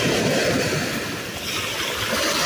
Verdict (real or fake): real